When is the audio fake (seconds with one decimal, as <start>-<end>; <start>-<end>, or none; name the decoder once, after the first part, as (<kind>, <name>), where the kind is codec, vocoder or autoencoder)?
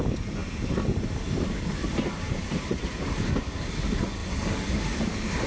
0.4-3.3 (vocoder, BigVGAN v2); 4.2-5.5